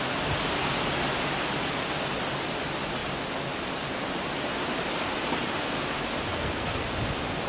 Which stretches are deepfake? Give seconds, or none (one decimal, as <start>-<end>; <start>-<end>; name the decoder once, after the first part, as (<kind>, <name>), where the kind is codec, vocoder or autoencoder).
6.3-6.8 (codec, SNAC)